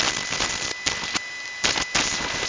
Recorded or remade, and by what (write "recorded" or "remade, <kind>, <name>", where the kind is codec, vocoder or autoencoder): recorded